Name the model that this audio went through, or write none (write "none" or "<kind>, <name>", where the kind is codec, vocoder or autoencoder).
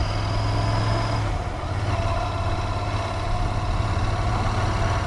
none